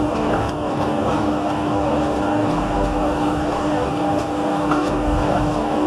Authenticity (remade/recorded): remade